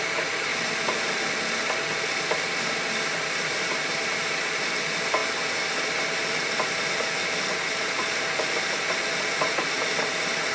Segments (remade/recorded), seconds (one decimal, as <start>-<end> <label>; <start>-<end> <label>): 0.0-0.5 remade; 0.5-2.6 recorded; 2.6-5.2 remade; 5.2-7.8 recorded; 7.8-10.5 remade